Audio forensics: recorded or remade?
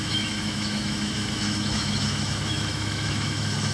remade